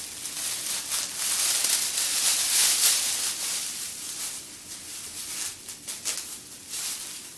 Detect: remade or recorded recorded